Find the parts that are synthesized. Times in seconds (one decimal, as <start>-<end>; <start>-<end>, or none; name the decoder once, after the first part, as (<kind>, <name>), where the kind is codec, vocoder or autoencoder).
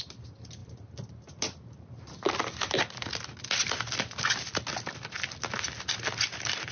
none